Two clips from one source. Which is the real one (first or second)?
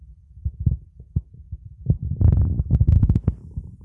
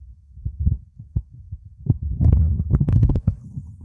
first